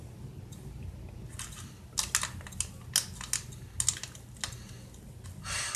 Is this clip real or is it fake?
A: real